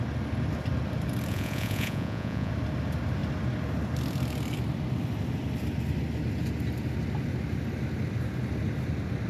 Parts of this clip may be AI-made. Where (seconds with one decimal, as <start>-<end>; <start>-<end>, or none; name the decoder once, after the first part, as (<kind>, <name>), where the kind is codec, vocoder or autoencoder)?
1.3-2.5 (vocoder, Vocos)